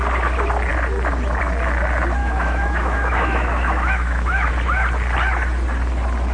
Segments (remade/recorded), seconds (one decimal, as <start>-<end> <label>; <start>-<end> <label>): 0.0-2.2 recorded; 2.2-4.5 remade; 4.5-6.3 recorded